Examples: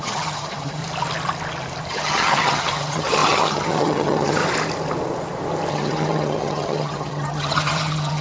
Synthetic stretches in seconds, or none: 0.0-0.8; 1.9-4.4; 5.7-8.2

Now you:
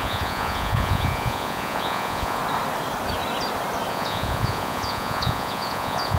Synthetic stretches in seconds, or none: 0.0-2.4; 3.9-6.2

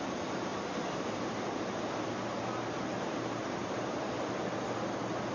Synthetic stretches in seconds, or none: 3.6-4.4

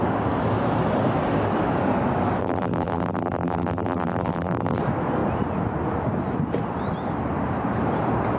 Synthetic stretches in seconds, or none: 2.4-4.8

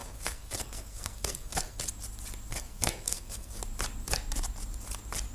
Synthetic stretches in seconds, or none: 0.0-1.8; 2.5-3.6

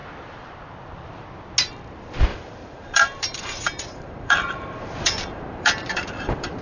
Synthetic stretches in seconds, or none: 2.3-6.6